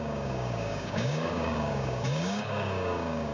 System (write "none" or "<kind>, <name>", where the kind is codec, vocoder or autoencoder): codec, DAC